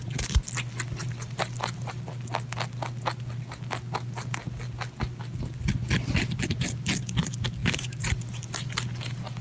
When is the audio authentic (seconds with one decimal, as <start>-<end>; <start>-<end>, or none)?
0.0-7.6; 8.7-9.4